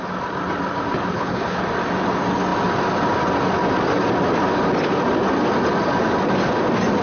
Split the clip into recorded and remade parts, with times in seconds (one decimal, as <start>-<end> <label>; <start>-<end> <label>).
0.0-1.1 recorded; 1.1-1.6 remade; 1.6-7.0 recorded